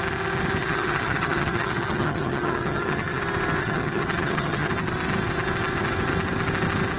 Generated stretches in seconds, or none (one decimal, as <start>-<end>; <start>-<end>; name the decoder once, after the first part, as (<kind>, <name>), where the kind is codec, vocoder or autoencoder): 0.6-3.2 (vocoder, HiFi-GAN); 3.6-4.7